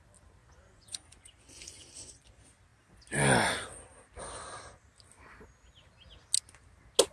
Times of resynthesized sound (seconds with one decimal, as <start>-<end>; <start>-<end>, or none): 0.4-2.2